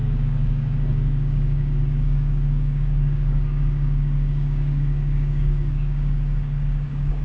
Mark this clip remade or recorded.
remade